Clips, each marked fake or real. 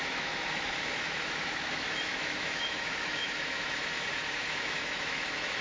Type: fake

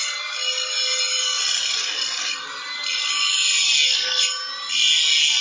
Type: real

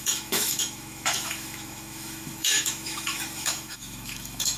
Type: fake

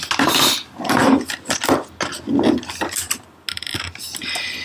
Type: real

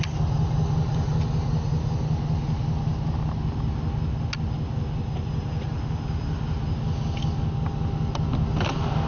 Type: real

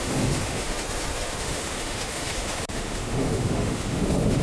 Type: fake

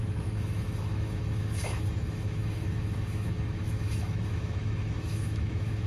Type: fake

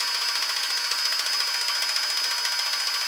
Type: real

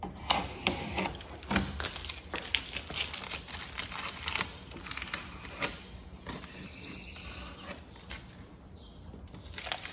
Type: real